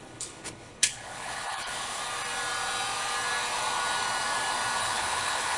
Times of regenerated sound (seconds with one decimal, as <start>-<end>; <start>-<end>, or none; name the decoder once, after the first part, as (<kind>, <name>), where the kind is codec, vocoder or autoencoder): 0.0-2.0 (codec, HILCodec); 4.8-5.6